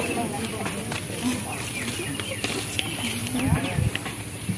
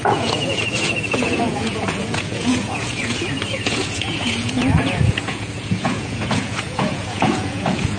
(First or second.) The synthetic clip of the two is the second